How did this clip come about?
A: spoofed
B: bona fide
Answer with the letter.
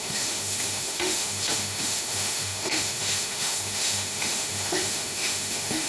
A